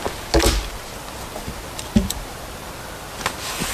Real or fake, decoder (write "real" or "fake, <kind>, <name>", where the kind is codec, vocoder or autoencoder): real